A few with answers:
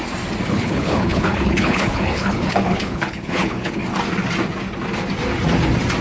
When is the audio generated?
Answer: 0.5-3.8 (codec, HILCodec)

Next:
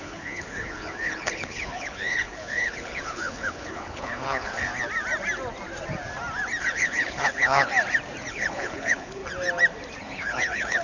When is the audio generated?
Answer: 0.0-4.7 (codec, HILCodec); 6.6-7.7; 8.3-9.2; 10.0-10.8

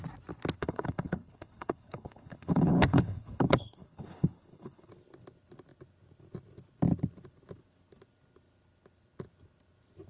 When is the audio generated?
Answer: 0.6-4.9 (codec, HILCodec)

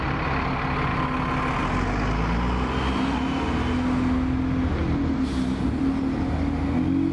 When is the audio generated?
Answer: none